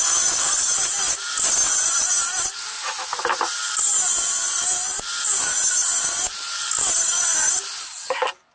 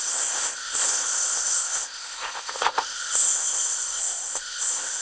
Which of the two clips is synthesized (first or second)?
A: second